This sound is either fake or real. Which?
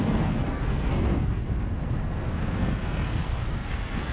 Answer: fake